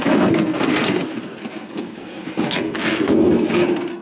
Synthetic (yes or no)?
yes